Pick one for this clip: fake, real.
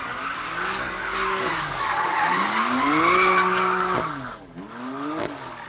fake